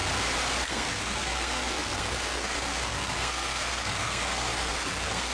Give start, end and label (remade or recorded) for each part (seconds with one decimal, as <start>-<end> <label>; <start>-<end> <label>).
0.0-0.7 recorded; 0.7-5.3 remade